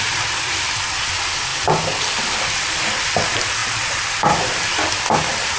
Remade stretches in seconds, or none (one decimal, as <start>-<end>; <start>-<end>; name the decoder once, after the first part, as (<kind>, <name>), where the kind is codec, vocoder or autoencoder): none